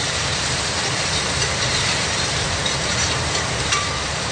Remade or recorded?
remade